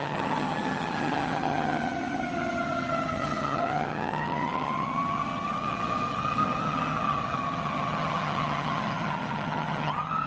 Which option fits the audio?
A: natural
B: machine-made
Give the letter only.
B